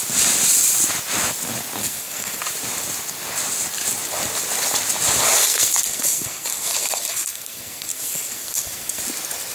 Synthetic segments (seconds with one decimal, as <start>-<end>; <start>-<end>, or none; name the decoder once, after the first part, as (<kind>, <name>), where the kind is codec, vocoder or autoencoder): 1.8-2.4 (codec, SNAC); 5.4-9.0